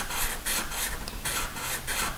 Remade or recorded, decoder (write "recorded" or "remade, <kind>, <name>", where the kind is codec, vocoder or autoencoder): remade, vocoder, BigVGAN v2